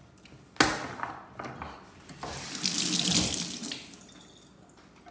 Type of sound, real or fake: real